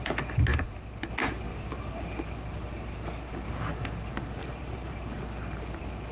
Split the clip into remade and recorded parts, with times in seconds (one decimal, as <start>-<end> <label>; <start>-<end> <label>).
0.0-1.5 recorded; 1.5-2.0 remade; 2.0-4.4 recorded; 4.4-5.0 remade; 5.0-6.1 recorded